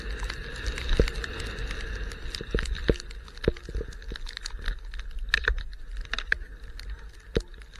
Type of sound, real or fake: real